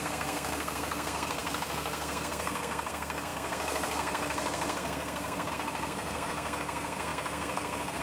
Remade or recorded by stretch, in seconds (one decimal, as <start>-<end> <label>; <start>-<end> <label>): 0.0-8.0 remade